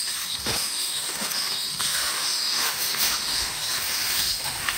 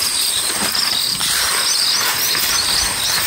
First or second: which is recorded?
second